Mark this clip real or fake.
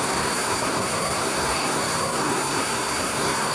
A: fake